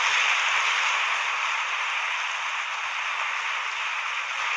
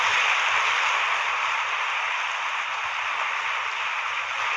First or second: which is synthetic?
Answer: second